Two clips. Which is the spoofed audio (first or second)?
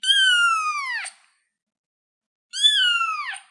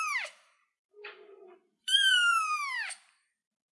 second